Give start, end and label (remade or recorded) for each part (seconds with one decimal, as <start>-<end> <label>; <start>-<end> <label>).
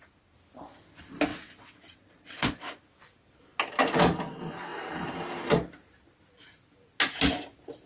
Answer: 0.0-1.3 recorded; 1.3-2.8 remade; 2.8-7.9 recorded